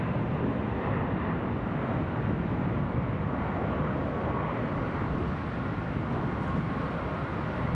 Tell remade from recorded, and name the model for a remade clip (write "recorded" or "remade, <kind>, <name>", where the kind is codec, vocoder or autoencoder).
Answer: recorded